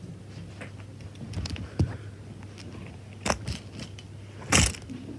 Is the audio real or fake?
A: real